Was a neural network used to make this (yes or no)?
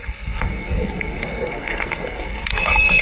yes